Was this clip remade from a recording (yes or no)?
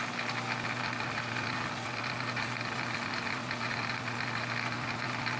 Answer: no